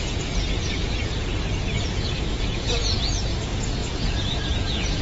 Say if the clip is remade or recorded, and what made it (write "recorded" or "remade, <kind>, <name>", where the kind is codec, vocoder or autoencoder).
remade, vocoder, Vocos